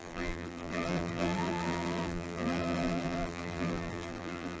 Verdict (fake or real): fake